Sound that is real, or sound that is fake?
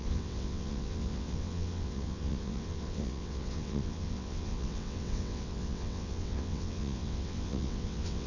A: fake